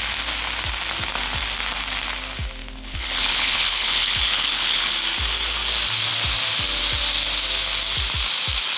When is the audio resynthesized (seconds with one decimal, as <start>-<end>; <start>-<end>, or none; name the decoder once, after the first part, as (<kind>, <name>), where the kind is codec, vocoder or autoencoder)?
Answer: 2.6-4.9 (codec, HILCodec)